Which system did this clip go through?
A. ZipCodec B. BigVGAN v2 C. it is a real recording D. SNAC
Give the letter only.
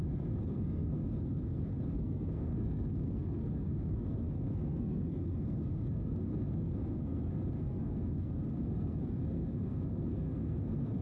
D